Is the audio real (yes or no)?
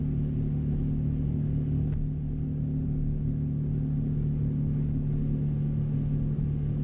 yes